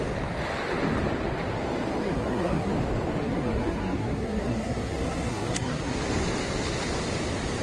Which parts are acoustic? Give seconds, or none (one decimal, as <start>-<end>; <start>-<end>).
0.0-2.0; 2.7-3.2; 6.0-7.6